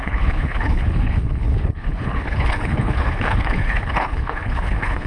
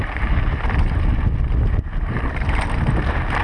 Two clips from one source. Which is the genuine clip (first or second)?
second